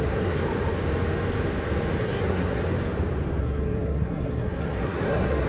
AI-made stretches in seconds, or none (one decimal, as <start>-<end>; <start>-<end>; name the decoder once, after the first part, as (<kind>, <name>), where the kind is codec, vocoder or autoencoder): 0.0-0.4 (codec, SNAC); 2.0-2.6; 3.4-5.5